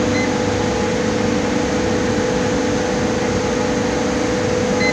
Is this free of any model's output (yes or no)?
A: yes